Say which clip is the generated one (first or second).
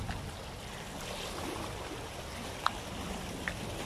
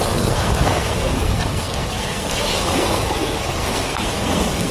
second